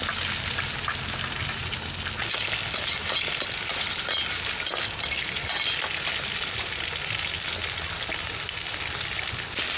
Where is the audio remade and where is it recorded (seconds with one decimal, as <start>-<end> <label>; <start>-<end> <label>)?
0.0-9.8 recorded